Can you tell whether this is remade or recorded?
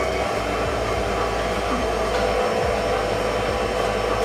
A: recorded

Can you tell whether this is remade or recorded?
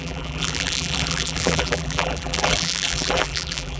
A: remade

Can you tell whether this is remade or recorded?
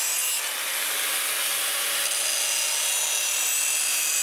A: recorded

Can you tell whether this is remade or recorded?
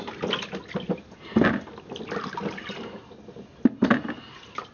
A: recorded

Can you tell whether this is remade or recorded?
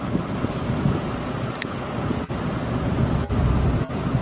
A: recorded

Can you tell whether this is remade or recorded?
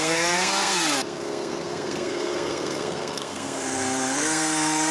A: remade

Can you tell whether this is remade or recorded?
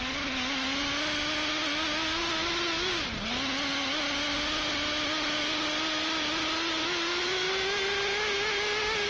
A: recorded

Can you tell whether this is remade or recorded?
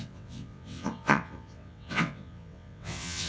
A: remade